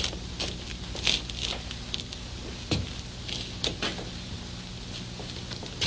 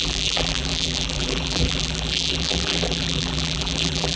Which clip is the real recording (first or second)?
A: first